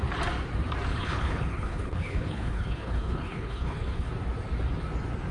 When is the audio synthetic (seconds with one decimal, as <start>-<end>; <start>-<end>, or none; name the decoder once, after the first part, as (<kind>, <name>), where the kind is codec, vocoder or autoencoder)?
0.9-4.1 (codec, HILCodec)